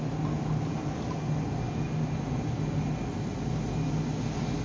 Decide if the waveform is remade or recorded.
recorded